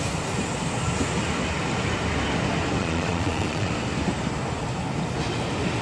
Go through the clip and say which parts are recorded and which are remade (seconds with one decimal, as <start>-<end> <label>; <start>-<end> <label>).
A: 0.0-2.8 recorded; 2.8-3.7 remade; 3.7-5.8 recorded